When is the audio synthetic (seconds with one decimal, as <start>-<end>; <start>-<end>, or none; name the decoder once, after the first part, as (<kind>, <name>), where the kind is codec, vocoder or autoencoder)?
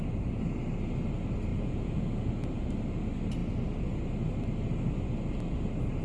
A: 1.5-2.6 (vocoder, Vocos)